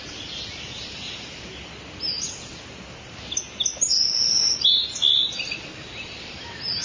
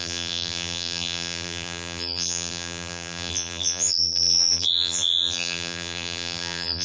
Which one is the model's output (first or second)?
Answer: second